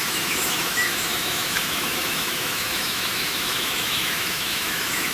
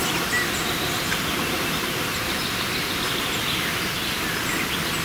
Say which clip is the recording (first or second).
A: second